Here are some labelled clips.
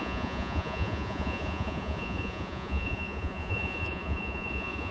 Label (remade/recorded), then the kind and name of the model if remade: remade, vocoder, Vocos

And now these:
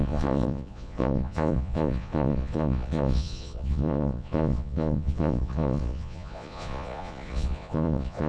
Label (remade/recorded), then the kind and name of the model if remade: remade, vocoder, Vocos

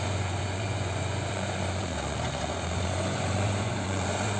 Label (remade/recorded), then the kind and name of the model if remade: remade, vocoder, Vocos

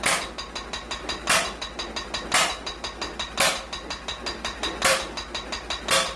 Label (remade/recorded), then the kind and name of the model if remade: recorded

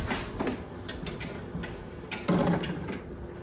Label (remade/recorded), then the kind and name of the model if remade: recorded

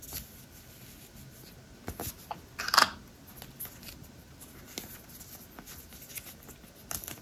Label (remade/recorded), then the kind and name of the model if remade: recorded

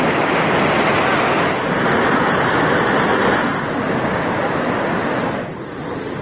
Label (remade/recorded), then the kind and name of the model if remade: recorded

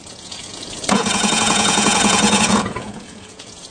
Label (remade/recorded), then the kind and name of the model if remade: remade, vocoder, Vocos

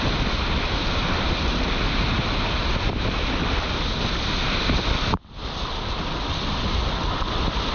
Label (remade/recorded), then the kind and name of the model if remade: recorded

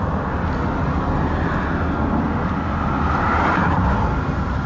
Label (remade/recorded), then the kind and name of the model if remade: recorded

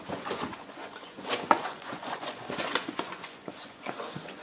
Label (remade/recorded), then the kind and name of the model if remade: remade, vocoder, Vocos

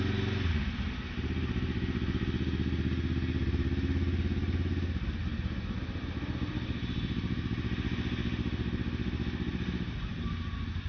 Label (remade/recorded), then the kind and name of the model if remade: recorded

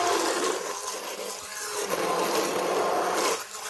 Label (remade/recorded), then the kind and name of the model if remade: recorded